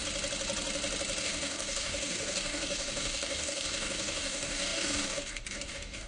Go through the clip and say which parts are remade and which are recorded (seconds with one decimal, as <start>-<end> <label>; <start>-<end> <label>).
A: 0.0-1.2 recorded; 1.2-6.1 remade